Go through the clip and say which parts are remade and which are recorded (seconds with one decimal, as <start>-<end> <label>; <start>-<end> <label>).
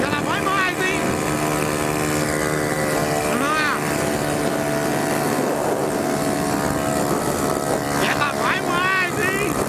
0.0-9.7 recorded